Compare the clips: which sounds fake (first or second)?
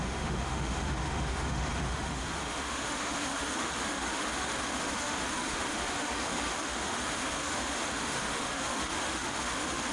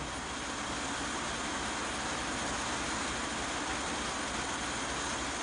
first